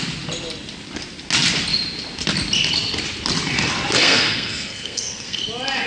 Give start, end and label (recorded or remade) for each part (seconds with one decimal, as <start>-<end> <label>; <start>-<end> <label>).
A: 0.0-4.0 recorded; 4.0-5.4 remade; 5.4-5.9 recorded